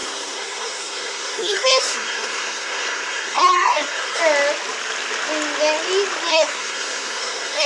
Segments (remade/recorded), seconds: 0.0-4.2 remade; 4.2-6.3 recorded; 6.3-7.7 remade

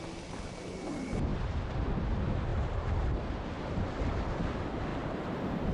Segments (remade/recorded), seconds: 0.0-1.3 recorded; 1.3-2.0 remade; 2.0-2.5 recorded; 2.5-4.0 remade; 4.0-4.9 recorded; 4.9-5.7 remade

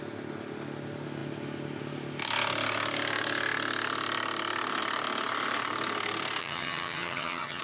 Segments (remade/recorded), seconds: 0.0-6.4 recorded; 6.4-7.6 remade